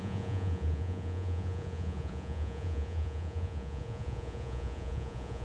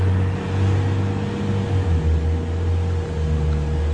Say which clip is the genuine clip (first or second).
second